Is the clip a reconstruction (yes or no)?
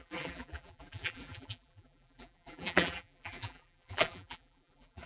yes